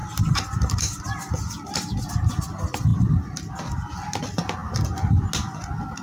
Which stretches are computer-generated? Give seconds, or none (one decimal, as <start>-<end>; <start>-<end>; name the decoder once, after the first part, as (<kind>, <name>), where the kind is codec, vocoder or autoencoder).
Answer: 0.0-1.5 (vocoder, BigVGAN v2); 2.9-3.5; 4.6-5.3